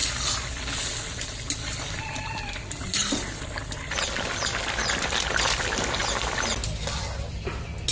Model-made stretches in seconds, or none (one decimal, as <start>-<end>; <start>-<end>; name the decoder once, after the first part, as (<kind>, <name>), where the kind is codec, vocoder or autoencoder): 0.0-4.7 (vocoder, BigVGAN v2)